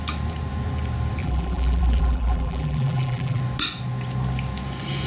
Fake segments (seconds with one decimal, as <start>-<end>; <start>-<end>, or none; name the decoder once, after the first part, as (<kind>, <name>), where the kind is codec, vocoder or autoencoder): 1.2-3.4 (vocoder, BigVGAN v2)